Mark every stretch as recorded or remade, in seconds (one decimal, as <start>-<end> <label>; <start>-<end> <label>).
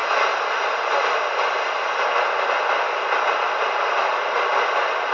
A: 0.0-5.1 recorded